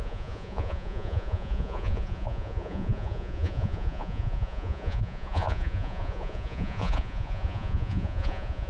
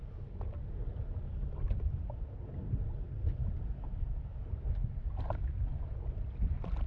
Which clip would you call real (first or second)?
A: second